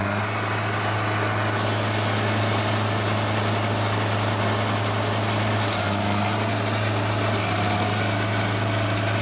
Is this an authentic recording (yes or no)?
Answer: yes